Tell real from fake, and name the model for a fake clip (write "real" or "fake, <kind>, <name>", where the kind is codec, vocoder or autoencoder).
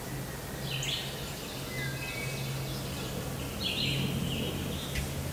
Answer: real